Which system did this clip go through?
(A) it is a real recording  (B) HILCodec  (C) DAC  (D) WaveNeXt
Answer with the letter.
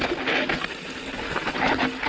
A